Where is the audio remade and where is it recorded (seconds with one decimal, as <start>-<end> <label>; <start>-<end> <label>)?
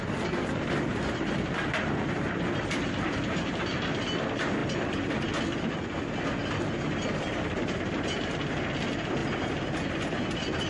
0.0-10.7 recorded